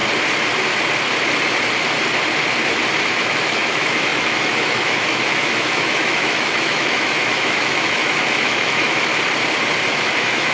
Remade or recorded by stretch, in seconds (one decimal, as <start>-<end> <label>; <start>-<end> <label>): 0.0-3.2 recorded; 3.2-9.1 remade; 9.1-9.9 recorded; 9.9-10.5 remade